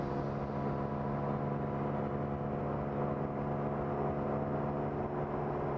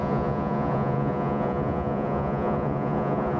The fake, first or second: second